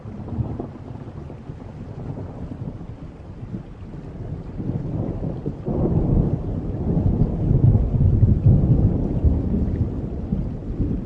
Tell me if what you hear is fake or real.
real